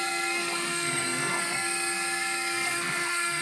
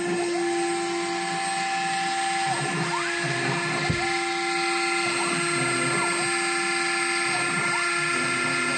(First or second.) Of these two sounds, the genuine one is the second